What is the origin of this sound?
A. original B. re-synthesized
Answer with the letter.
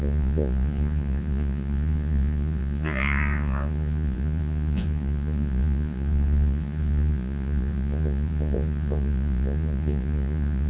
B